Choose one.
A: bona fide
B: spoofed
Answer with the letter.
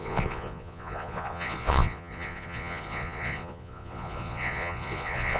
B